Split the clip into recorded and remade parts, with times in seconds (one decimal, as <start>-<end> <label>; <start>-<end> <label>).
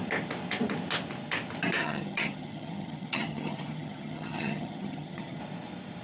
0.0-1.8 recorded; 1.8-5.4 remade; 5.4-6.0 recorded